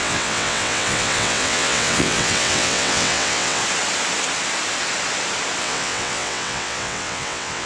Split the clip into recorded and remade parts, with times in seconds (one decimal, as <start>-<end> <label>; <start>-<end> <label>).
0.0-3.6 remade; 3.6-5.6 recorded; 5.6-7.7 remade